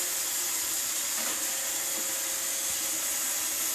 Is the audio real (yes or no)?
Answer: yes